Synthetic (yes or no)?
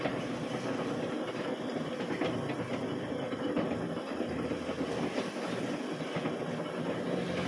no